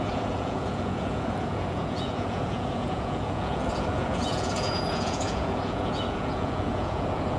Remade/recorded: remade